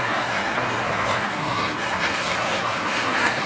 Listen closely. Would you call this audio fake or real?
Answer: fake